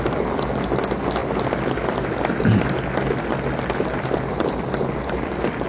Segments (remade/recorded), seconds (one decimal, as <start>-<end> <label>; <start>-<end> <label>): 0.0-5.7 recorded